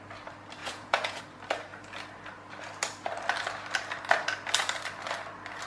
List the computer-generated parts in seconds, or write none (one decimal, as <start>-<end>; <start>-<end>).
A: 0.6-1.2